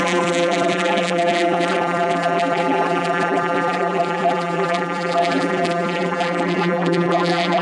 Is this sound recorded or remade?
remade